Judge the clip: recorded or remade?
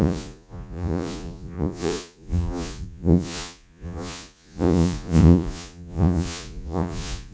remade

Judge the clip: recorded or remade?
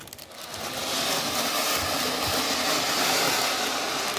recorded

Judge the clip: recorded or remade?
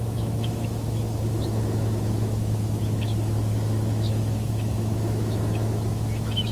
remade